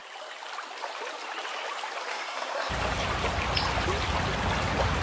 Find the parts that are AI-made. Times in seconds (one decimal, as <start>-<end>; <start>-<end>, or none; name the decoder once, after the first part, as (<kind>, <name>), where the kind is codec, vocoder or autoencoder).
2.1-2.7 (codec, SNAC)